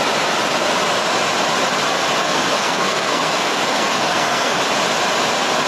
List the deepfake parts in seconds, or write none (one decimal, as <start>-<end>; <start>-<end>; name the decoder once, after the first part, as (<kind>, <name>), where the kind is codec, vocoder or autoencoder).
2.2-4.6 (codec, SNAC)